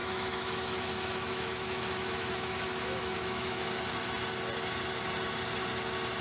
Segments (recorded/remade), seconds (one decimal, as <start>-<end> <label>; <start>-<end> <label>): 0.0-3.7 remade; 3.7-6.2 recorded

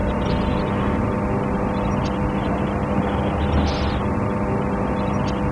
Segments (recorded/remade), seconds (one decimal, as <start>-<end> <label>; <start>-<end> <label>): 0.0-5.5 recorded

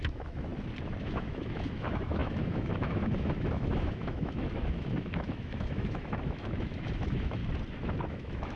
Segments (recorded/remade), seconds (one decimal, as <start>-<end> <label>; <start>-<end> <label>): 0.0-0.5 remade; 0.5-1.0 recorded; 1.0-7.4 remade; 7.4-8.1 recorded; 8.1-8.6 remade

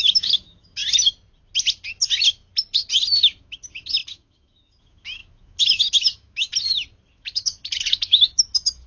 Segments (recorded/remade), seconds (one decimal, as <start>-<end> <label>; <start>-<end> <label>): 0.0-0.8 remade; 0.8-3.4 recorded; 3.4-6.5 remade; 6.5-7.1 recorded; 7.1-8.9 remade